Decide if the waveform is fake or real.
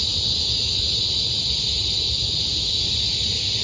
real